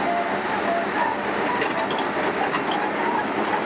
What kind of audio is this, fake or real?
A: real